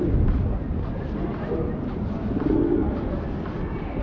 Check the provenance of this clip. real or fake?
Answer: real